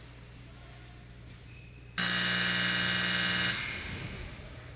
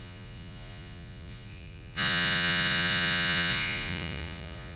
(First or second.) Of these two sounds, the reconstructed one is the second